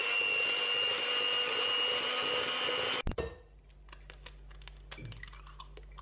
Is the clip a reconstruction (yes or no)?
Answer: no